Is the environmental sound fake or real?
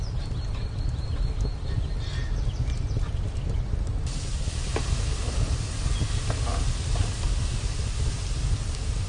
real